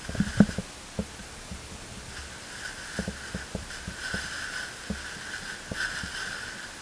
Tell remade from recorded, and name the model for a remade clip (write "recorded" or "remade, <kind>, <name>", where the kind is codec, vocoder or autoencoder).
recorded